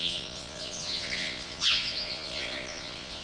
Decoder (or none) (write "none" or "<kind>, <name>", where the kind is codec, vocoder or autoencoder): vocoder, Vocos